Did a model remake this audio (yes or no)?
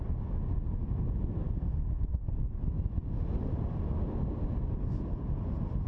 no